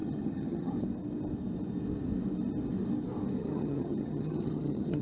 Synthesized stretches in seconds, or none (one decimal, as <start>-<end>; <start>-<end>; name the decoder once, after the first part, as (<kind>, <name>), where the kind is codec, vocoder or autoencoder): 0.0-0.7 (vocoder, HiFi-GAN); 3.4-5.0